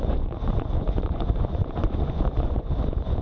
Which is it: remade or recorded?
remade